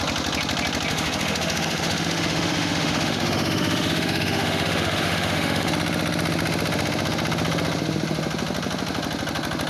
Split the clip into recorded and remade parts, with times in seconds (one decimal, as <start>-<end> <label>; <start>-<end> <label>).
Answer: 0.0-0.9 recorded; 0.9-5.7 remade; 5.7-9.7 recorded